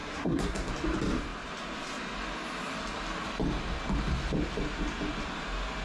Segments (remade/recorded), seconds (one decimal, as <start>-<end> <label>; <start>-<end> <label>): 0.0-0.7 remade; 0.7-5.8 recorded